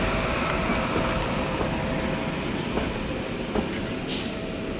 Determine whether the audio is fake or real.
real